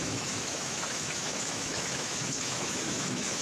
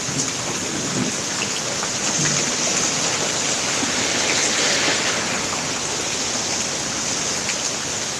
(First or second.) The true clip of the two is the second